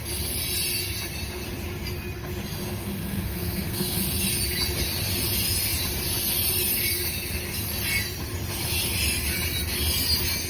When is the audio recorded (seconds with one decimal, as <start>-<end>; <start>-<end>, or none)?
0.0-3.0; 4.0-10.5